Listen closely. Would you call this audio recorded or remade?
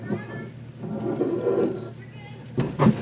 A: recorded